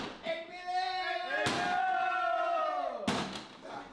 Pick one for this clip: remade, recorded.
recorded